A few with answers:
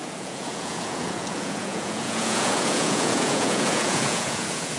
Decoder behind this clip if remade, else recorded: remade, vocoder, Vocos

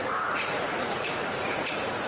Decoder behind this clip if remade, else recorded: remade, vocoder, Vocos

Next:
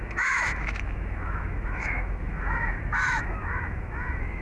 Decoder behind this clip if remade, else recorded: remade, autoencoder, DAC-VAE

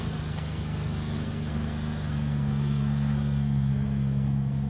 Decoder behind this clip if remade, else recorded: remade, codec, SNAC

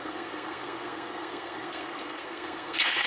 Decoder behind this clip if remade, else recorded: remade, codec, SNAC